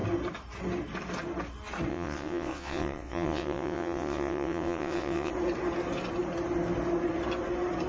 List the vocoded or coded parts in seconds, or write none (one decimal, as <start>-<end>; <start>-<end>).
1.9-5.3